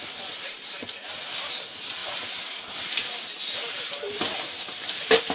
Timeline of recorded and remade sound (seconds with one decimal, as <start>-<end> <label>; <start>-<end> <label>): 0.0-5.3 recorded